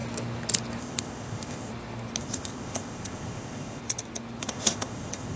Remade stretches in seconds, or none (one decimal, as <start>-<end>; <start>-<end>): 0.8-1.7; 2.2-3.8; 4.4-5.4